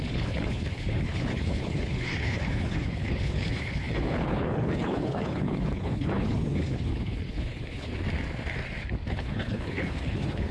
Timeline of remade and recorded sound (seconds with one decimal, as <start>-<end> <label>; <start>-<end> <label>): 0.0-7.9 remade; 7.9-9.1 recorded; 9.1-10.5 remade